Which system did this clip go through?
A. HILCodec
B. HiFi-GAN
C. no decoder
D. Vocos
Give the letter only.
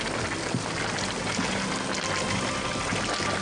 C